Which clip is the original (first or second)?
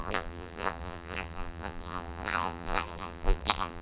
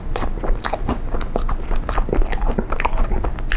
second